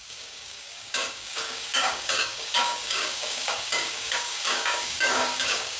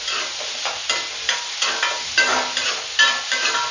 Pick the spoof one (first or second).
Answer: first